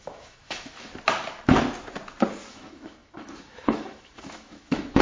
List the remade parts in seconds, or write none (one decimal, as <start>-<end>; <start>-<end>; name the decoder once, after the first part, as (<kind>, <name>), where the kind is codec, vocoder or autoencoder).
0.0-0.9 (autoencoder, DAC-VAE); 2.5-5.0